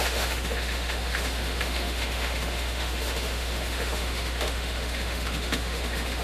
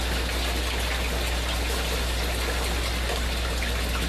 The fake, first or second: first